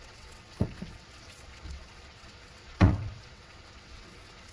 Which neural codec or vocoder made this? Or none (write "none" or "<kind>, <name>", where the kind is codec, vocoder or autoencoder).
vocoder, WaveNeXt